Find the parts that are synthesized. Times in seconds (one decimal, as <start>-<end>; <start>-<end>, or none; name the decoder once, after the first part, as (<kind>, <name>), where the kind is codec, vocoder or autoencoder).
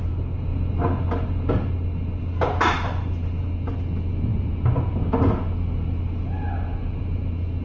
none